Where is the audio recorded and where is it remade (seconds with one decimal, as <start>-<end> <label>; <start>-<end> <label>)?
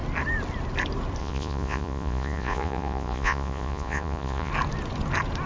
0.0-1.2 recorded; 1.2-4.5 remade; 4.5-5.5 recorded